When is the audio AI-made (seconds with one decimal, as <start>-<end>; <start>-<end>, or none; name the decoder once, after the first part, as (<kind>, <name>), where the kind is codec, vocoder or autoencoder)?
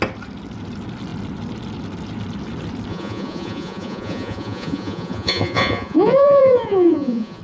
2.9-7.4 (vocoder, Vocos)